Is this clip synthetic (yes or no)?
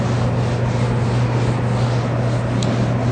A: no